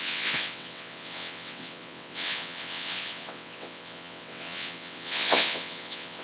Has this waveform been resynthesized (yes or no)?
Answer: yes